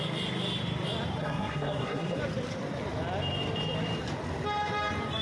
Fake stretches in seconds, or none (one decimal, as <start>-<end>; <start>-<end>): 1.2-2.2